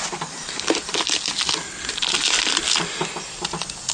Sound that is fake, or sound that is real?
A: real